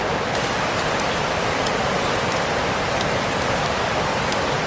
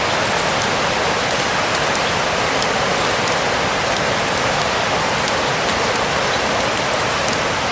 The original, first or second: second